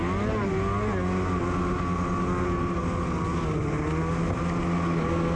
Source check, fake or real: real